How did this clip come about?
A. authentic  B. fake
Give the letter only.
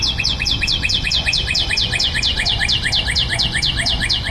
B